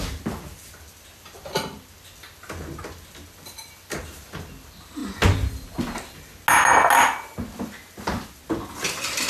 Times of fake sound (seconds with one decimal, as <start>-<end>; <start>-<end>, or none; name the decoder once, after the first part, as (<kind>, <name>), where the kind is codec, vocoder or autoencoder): none